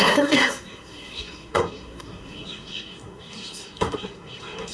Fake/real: fake